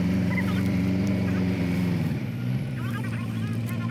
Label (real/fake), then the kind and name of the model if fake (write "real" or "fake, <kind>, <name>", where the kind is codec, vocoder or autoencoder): fake, vocoder, BigVGAN v2